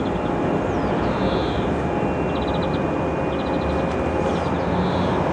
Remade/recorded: recorded